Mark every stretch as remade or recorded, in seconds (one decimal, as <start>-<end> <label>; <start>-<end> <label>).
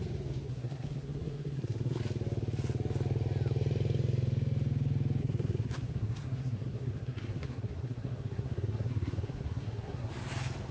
0.0-0.5 recorded; 0.5-2.0 remade; 2.0-5.2 recorded; 5.2-10.1 remade; 10.1-10.7 recorded